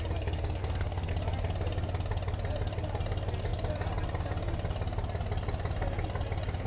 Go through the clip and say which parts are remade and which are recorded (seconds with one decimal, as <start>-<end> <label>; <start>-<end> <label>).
0.0-0.6 recorded; 0.6-1.1 remade; 1.1-6.7 recorded